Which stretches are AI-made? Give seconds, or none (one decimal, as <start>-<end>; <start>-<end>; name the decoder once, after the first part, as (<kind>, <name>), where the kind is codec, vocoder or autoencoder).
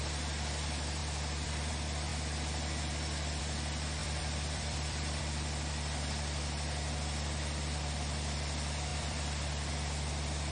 1.0-1.7 (vocoder, BigVGAN v2); 4.0-5.2; 8.9-9.7